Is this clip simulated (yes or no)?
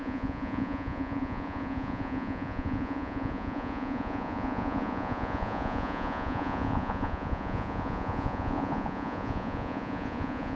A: yes